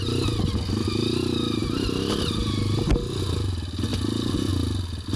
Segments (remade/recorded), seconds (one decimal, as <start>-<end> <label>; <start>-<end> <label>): 0.0-5.2 recorded